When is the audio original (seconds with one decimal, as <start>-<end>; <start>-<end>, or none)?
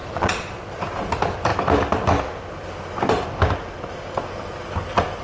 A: 0.8-5.2